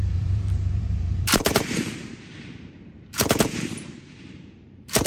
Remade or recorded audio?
remade